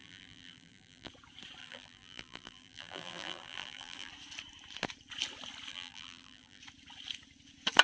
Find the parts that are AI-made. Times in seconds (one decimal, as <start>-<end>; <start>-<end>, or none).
0.0-1.1; 1.6-4.1; 5.7-6.6